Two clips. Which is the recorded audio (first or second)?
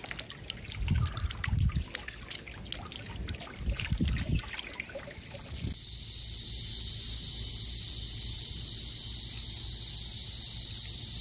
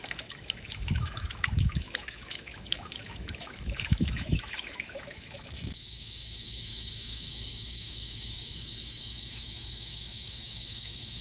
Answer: first